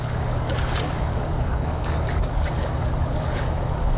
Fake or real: fake